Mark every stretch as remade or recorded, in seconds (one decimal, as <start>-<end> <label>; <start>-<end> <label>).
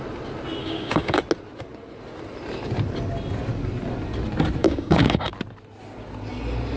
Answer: 0.0-0.6 recorded; 0.6-1.2 remade; 1.2-4.6 recorded; 4.6-5.3 remade; 5.3-6.8 recorded